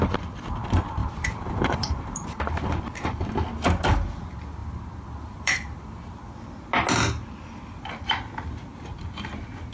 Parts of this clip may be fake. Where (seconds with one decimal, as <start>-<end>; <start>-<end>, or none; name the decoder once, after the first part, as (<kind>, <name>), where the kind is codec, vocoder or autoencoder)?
1.0-2.7 (vocoder, BigVGAN v2); 4.6-6.1